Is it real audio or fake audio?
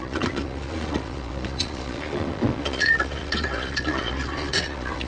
fake